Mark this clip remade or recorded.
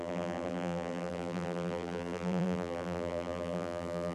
remade